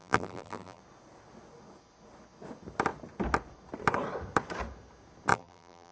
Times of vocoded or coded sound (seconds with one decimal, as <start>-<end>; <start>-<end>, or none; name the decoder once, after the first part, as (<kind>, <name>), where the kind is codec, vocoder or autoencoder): 0.0-0.8 (vocoder, BigVGAN v2); 5.3-5.9